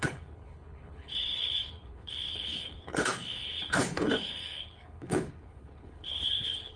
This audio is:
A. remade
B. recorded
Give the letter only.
A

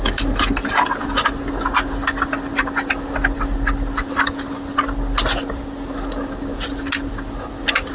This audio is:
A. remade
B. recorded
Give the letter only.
B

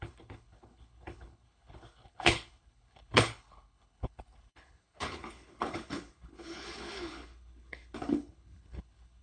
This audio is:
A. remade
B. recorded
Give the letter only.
A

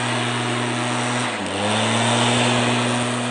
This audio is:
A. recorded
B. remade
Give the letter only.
A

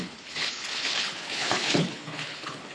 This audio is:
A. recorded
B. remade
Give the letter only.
B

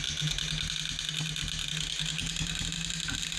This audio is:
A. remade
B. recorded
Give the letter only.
B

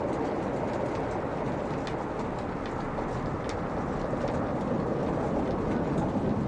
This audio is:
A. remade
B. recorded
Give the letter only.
B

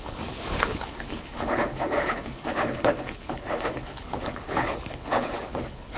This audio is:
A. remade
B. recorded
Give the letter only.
A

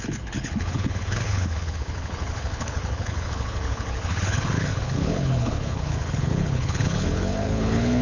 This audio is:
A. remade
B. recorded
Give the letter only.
A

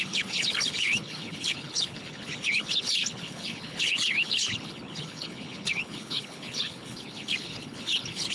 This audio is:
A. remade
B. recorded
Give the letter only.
A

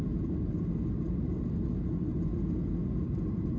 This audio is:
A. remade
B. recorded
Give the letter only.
B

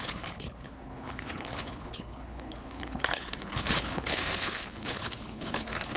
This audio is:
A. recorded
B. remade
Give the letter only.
B